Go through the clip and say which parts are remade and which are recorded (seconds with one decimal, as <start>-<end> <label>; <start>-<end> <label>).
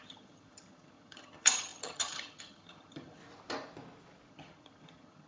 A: 0.0-3.2 remade; 3.2-4.3 recorded; 4.3-5.3 remade